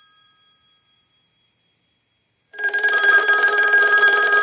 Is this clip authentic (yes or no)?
no